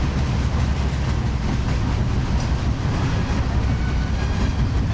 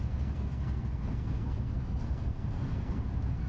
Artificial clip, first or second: second